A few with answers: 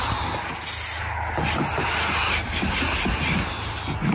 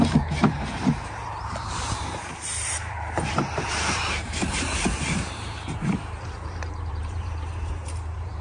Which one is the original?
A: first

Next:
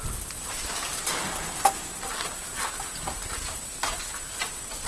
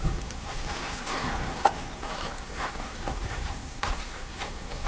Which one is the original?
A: first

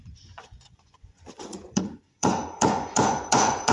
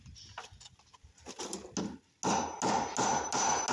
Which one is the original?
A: second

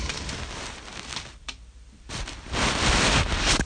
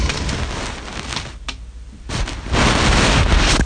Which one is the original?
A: second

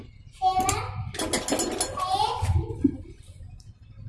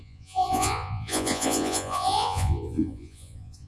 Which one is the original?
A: first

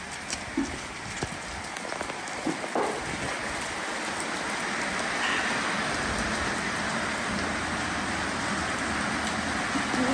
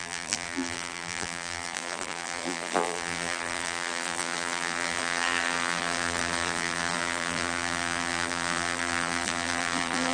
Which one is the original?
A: first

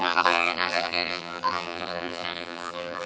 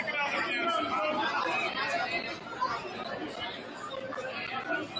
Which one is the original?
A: second